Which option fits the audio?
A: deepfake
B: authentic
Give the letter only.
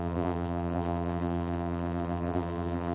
A